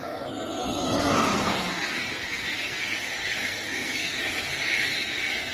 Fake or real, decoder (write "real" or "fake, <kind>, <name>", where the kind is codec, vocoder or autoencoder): fake, codec, SNAC